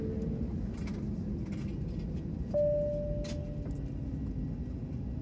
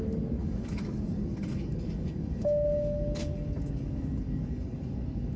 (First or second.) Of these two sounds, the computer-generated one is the second